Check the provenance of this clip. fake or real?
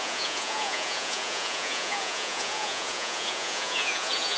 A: fake